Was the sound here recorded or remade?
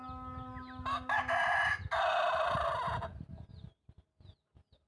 recorded